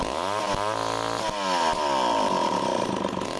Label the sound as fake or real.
real